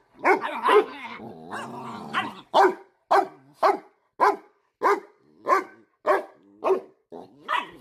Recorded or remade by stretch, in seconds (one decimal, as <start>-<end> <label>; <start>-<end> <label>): 0.0-0.7 recorded; 0.7-1.2 remade; 1.2-7.8 recorded